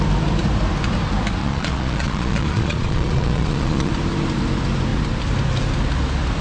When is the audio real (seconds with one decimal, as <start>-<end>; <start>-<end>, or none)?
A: 0.0-1.4; 3.9-6.4